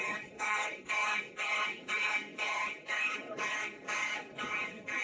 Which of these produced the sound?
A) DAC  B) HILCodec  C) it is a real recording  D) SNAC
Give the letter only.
B